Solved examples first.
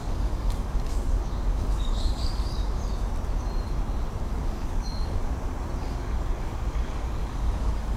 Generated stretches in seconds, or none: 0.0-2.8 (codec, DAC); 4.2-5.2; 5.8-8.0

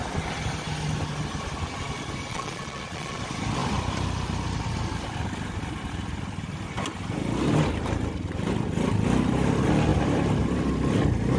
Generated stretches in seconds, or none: 2.3-3.2 (vocoder, Vocos)

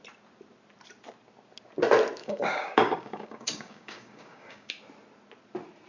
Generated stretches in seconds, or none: 2.2-4.7 (codec, DAC)

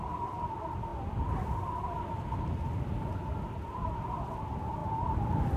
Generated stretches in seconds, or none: none